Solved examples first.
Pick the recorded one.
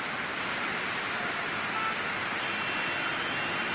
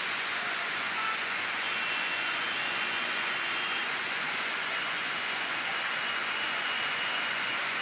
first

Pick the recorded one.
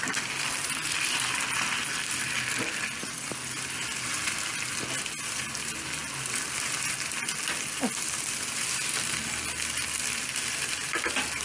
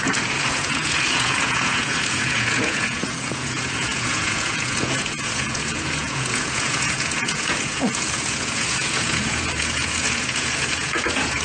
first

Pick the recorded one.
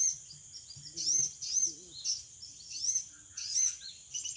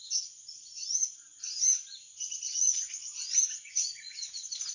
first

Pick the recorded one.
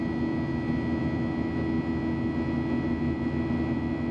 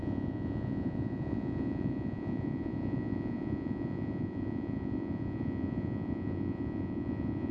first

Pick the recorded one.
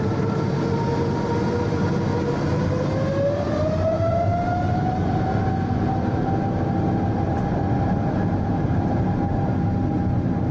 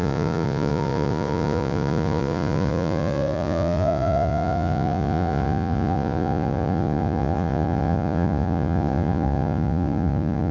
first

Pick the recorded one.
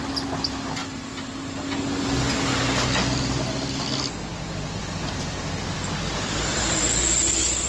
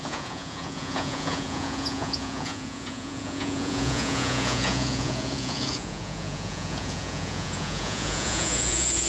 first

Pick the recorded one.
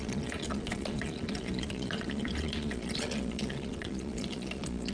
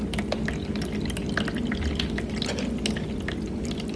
second